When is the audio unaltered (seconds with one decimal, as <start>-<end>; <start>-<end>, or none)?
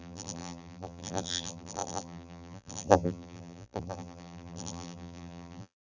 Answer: none